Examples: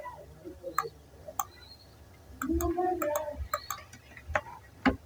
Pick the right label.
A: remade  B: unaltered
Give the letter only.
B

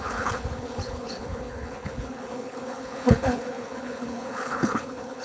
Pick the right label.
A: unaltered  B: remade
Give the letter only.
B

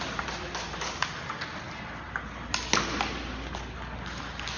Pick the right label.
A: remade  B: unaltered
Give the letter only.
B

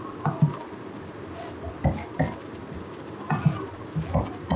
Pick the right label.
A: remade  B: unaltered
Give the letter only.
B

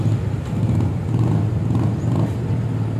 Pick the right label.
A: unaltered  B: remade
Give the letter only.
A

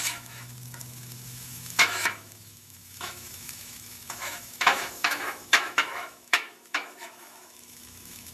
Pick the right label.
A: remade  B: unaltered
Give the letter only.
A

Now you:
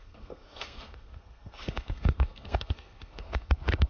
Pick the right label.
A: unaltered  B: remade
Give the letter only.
B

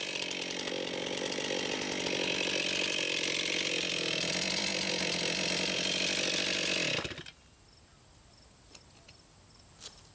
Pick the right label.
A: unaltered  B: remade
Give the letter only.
A